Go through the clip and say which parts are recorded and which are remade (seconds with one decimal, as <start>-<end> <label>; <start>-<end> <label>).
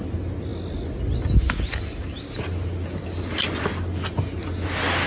0.0-5.1 recorded